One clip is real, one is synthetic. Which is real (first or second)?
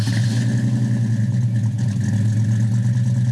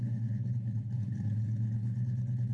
first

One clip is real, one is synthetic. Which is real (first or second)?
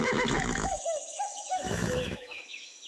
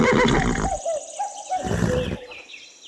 second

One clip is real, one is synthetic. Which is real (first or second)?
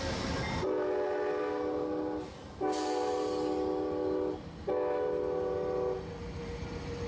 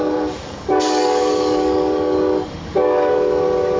first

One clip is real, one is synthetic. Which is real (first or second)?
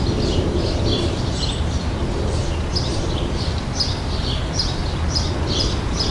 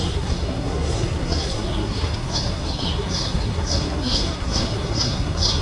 first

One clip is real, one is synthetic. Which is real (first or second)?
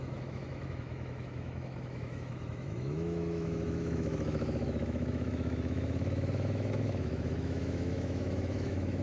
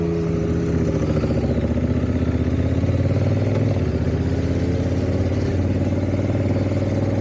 second